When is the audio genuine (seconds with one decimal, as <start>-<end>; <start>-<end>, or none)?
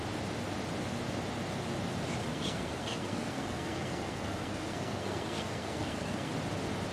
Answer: 0.0-2.2; 6.3-6.9